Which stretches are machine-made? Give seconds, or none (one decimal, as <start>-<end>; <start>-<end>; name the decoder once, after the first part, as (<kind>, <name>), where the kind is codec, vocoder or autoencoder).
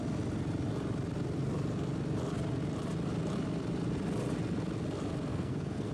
5.3-5.9 (codec, SNAC)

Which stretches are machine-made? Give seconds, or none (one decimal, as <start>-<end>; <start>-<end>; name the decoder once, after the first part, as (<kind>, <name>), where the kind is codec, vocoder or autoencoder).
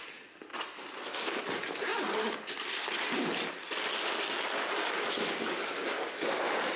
none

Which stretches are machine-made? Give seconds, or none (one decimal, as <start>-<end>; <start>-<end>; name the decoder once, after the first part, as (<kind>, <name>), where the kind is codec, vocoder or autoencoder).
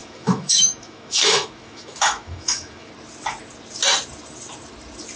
0.0-2.9 (autoencoder, DAC-VAE)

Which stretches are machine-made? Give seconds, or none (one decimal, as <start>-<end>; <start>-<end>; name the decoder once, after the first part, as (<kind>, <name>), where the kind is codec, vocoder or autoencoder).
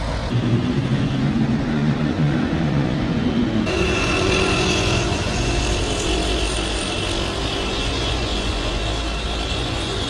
0.0-5.6 (vocoder, Vocos); 7.7-8.8; 9.5-10.1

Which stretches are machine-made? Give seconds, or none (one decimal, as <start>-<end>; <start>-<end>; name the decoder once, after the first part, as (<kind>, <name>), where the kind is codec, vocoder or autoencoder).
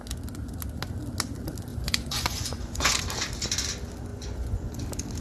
1.7-3.0 (vocoder, Vocos); 4.1-4.8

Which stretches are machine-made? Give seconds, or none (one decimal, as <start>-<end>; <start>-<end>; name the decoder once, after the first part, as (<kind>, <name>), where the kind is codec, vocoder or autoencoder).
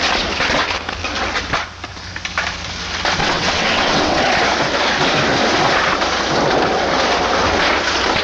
3.2-4.2 (vocoder, WaveNeXt)